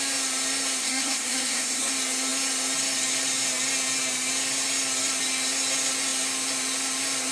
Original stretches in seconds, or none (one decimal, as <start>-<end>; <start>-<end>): 0.0-0.8; 1.9-7.3